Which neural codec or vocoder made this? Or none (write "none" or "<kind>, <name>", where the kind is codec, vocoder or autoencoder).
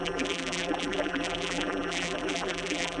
vocoder, BigVGAN v2